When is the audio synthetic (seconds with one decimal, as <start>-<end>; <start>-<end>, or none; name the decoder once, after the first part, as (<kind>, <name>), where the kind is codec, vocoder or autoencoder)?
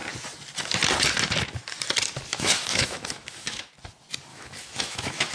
2.3-3.7 (autoencoder, DAC-VAE); 4.3-5.3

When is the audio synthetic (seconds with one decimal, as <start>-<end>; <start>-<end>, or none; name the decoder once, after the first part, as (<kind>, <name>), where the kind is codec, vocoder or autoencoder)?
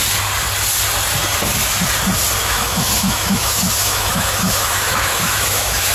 2.4-5.9 (autoencoder, DAC-VAE)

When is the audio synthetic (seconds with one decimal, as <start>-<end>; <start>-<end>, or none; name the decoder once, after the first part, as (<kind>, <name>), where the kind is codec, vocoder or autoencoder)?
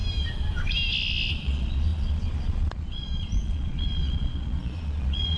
1.3-5.4 (vocoder, Vocos)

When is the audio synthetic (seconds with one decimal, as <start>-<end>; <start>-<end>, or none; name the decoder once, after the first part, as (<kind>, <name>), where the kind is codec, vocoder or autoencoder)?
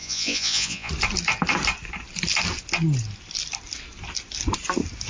0.0-0.9 (vocoder, Vocos)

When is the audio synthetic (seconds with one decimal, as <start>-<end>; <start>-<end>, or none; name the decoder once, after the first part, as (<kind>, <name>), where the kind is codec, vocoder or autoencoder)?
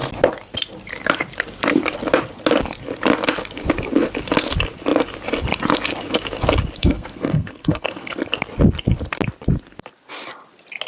6.8-8.2 (codec, SNAC)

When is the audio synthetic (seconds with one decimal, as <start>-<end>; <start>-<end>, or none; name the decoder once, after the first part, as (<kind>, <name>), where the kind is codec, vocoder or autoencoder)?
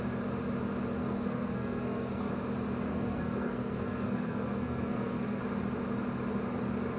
1.0-2.3 (codec, SNAC); 2.9-5.4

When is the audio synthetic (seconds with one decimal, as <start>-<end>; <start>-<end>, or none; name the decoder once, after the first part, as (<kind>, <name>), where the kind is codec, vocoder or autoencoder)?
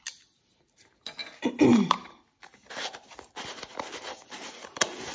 none